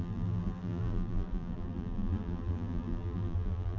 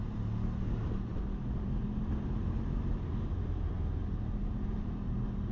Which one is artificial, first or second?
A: first